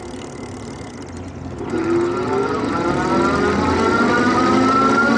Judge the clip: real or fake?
real